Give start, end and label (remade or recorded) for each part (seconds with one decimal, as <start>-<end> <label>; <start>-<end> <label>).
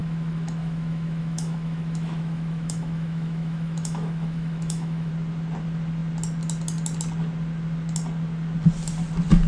0.0-5.1 remade; 5.1-9.5 recorded